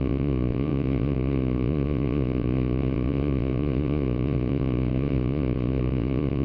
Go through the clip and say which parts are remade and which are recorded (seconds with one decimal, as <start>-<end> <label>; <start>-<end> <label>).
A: 0.0-6.4 remade